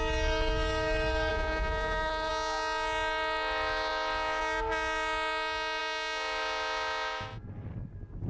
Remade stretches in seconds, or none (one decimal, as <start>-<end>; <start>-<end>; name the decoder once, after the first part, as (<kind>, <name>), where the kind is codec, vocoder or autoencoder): 1.3-2.3 (codec, SNAC)